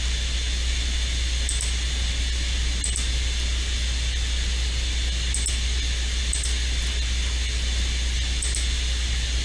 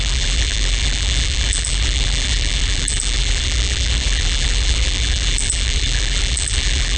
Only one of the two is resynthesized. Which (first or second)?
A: second